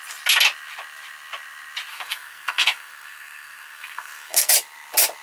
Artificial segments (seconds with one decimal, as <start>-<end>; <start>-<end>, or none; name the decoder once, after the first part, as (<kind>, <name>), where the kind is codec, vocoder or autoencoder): 1.9-4.5 (codec, SNAC)